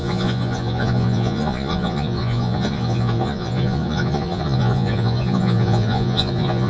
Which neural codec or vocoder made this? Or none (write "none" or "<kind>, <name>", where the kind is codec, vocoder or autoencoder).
vocoder, Vocos